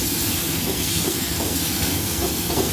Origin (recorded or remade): remade